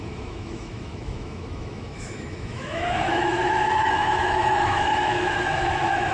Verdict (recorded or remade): remade